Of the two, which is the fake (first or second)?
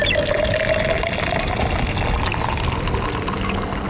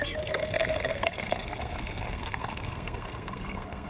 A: second